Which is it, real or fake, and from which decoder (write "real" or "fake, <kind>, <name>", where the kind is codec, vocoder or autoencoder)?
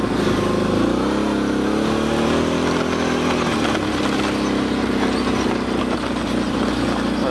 real